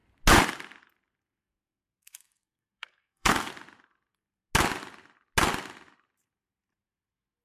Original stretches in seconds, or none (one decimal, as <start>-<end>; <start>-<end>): 0.0-1.4; 3.5-7.4